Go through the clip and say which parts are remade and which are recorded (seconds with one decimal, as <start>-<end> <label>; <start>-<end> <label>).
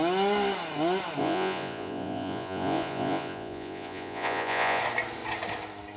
0.0-1.2 recorded; 1.2-4.8 remade; 4.8-6.0 recorded